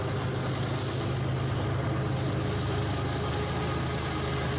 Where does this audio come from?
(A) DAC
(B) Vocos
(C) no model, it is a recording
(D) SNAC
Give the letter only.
C